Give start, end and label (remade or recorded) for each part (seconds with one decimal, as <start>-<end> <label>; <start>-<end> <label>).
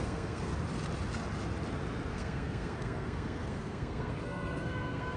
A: 0.0-0.5 remade; 0.5-2.1 recorded; 2.1-5.2 remade